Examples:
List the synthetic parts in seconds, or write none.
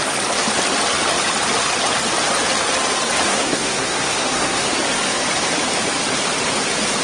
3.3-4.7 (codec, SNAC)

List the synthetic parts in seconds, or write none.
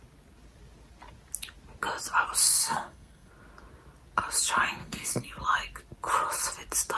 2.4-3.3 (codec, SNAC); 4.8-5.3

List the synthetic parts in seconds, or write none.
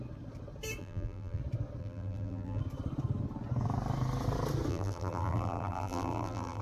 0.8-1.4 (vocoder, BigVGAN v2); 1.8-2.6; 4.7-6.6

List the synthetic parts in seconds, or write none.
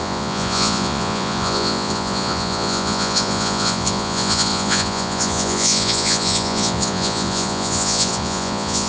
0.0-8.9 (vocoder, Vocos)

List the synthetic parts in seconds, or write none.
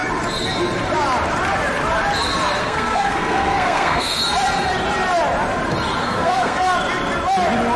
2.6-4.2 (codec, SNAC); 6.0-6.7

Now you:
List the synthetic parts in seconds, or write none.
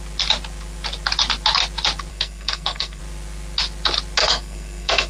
2.1-3.0 (codec, SNAC); 4.2-5.1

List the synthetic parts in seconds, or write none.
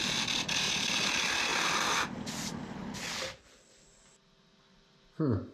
none